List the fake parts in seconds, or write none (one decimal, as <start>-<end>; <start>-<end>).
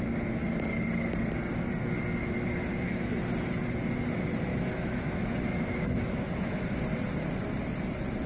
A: 2.2-3.1; 4.5-6.8